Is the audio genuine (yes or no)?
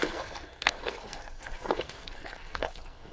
no